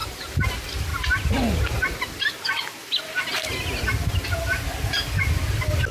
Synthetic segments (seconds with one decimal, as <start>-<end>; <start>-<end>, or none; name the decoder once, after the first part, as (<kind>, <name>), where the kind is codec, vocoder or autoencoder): 0.0-0.5 (vocoder, BigVGAN v2); 2.8-4.4